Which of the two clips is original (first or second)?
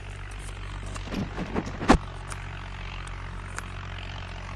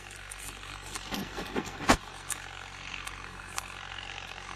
first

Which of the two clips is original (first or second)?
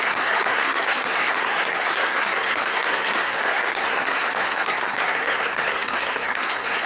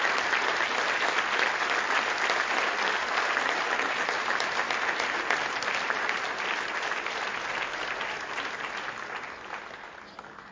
second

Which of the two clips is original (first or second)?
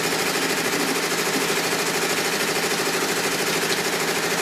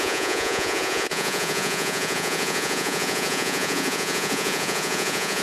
first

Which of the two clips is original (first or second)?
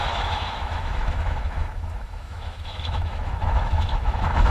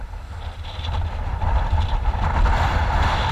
second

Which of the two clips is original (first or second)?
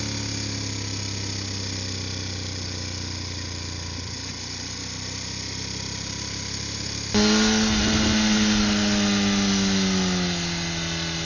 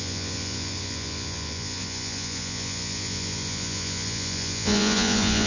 first